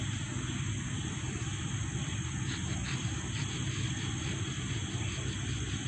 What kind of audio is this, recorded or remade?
recorded